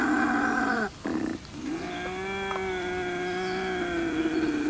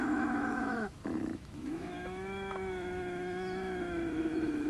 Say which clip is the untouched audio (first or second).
first